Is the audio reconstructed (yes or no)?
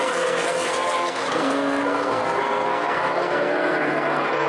yes